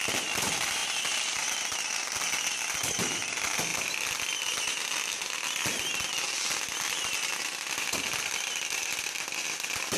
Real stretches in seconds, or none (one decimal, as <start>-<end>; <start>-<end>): 0.0-10.0